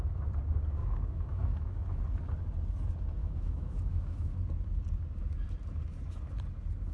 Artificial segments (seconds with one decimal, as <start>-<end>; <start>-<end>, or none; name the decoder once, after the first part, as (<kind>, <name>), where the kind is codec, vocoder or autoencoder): 0.8-2.0 (autoencoder, DAC-VAE); 3.2-4.3